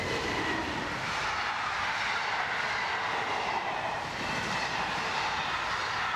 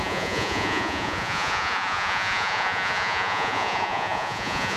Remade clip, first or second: second